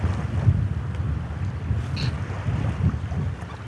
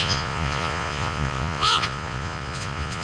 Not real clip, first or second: second